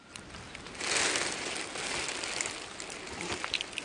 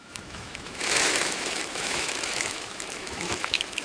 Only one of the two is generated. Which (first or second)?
second